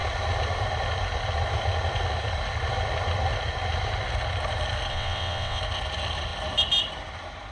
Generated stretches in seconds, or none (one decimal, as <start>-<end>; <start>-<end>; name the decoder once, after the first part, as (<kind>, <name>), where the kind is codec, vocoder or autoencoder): 4.9-5.6 (vocoder, WaveNeXt)